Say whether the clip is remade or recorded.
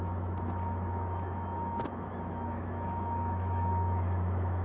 remade